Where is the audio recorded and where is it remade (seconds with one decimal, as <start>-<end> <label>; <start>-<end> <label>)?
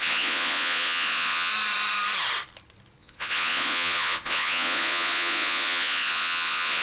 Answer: 0.0-1.5 remade; 1.5-3.0 recorded; 3.0-6.8 remade